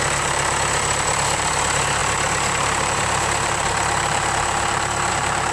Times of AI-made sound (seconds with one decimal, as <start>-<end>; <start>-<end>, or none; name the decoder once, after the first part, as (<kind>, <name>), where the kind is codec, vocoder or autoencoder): 0.0-5.5 (vocoder, BigVGAN v2)